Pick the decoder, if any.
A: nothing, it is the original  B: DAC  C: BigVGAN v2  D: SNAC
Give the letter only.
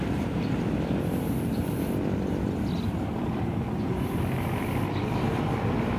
C